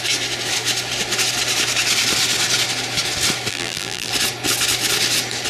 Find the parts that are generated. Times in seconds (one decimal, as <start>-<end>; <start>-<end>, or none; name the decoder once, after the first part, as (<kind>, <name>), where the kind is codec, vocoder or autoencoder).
3.5-4.1 (vocoder, BigVGAN v2)